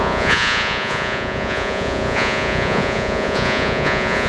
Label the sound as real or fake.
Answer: fake